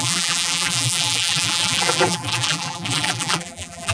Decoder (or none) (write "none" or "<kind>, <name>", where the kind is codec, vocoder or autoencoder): vocoder, BigVGAN v2